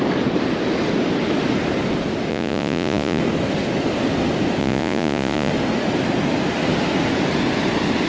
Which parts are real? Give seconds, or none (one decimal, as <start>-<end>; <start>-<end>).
0.0-2.3; 3.2-4.6; 5.5-8.1